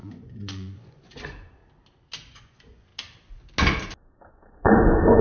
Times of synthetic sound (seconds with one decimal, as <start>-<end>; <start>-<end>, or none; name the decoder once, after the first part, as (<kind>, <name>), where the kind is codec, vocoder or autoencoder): 0.0-1.6 (vocoder, Vocos); 2.3-2.9; 4.3-5.2